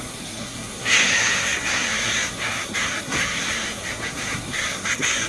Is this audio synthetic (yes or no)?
yes